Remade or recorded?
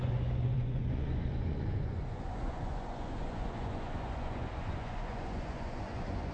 remade